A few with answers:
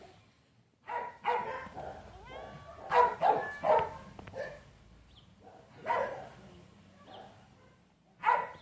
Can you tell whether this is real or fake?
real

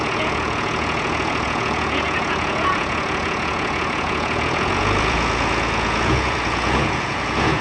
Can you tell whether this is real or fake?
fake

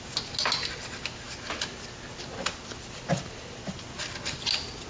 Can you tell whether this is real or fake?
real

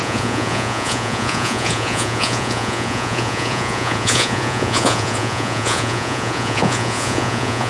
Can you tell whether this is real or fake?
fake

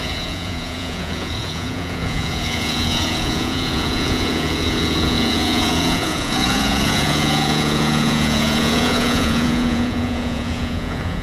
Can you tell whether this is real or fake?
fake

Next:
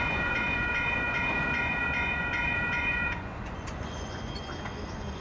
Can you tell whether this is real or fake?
fake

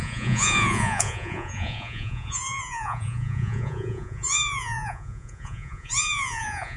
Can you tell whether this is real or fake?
fake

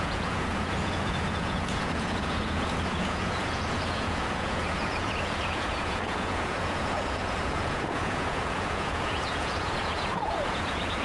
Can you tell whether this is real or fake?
fake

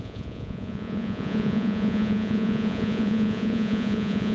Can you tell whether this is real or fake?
fake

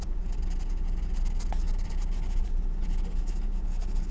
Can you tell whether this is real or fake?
real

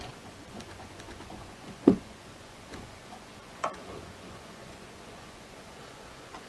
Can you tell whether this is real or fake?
fake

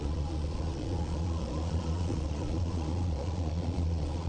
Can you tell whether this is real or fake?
fake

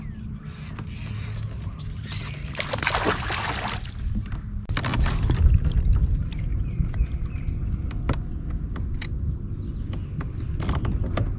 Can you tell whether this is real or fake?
real